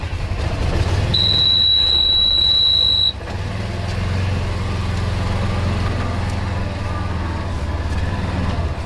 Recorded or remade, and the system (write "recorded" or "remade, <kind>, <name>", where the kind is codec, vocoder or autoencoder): recorded